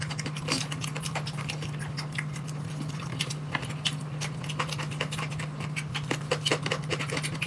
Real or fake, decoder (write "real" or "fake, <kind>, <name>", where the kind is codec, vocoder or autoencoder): real